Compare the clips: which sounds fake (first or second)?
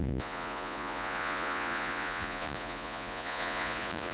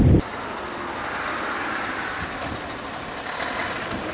first